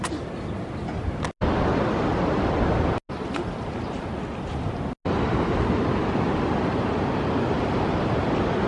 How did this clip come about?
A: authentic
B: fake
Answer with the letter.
A